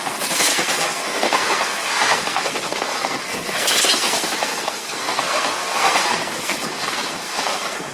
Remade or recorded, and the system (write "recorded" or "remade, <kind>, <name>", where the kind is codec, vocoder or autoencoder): remade, codec, SNAC